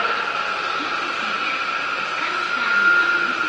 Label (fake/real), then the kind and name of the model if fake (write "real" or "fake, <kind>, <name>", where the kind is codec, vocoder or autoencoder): real